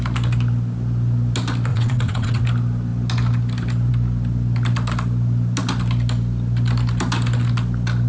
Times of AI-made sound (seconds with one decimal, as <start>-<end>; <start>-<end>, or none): 1.7-2.4